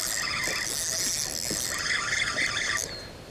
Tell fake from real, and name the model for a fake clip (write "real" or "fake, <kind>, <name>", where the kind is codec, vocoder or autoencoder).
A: real